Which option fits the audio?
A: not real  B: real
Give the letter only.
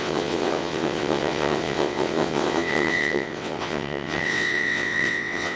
A